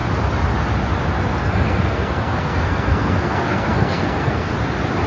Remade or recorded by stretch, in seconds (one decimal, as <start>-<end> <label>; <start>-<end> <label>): 0.0-1.4 recorded; 1.4-4.5 remade; 4.5-5.1 recorded